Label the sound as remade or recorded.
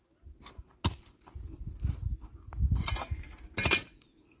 recorded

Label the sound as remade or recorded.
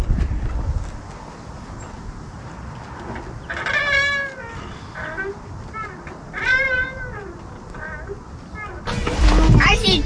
recorded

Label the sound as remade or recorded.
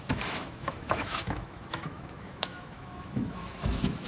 remade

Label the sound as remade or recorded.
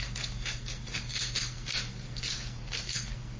remade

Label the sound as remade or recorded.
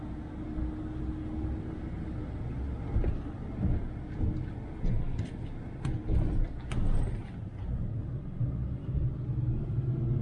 recorded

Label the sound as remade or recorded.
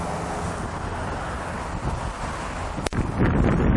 recorded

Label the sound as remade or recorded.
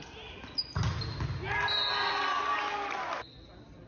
recorded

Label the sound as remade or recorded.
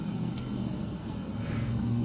remade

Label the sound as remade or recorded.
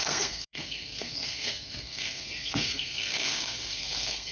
remade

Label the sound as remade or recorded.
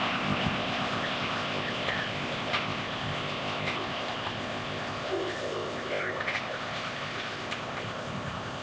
remade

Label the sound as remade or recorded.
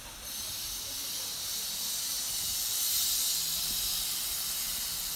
recorded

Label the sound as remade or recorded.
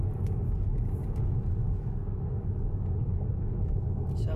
recorded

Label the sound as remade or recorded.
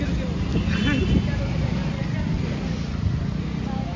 recorded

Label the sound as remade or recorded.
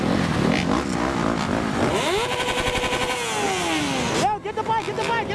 recorded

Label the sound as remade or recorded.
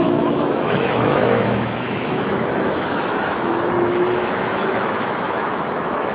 remade